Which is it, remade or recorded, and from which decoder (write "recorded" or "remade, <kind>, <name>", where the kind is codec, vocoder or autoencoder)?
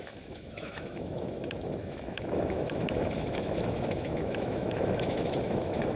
remade, autoencoder, DAC-VAE